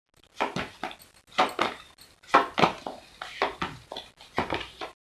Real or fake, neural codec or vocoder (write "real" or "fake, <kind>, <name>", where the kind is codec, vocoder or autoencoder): real